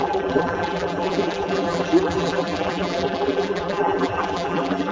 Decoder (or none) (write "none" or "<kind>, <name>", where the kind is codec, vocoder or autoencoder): vocoder, BigVGAN v2